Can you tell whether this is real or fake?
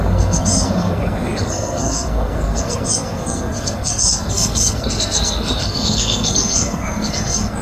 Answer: fake